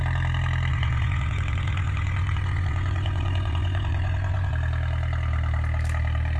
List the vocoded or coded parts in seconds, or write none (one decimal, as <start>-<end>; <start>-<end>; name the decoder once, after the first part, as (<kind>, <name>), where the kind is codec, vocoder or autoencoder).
0.7-4.5 (vocoder, Vocos)